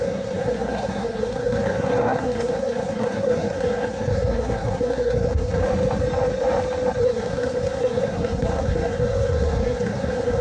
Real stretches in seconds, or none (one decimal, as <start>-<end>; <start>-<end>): 5.6-7.0